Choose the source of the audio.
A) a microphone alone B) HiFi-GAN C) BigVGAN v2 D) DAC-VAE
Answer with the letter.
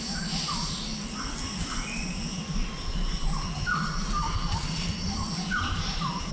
A